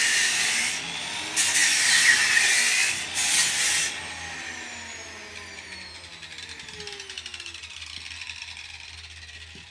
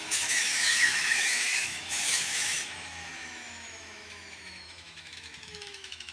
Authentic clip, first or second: first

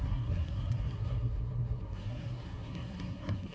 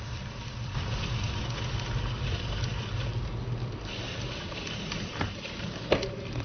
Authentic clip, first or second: second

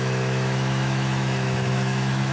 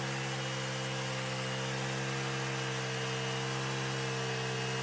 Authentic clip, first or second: second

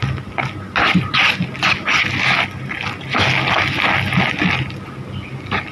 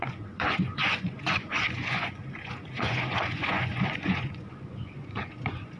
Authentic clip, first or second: first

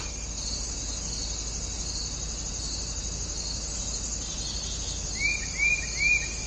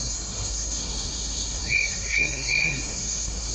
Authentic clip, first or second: first